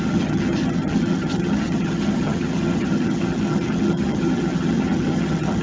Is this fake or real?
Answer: fake